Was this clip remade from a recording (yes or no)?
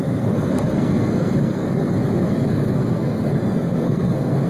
yes